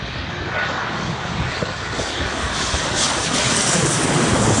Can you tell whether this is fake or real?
fake